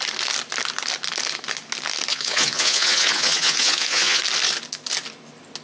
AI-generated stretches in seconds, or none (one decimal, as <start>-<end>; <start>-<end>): 2.1-4.2